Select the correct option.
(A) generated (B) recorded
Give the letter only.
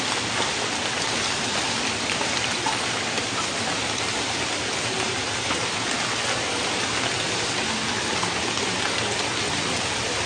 B